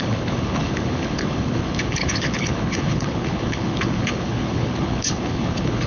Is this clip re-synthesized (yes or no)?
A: yes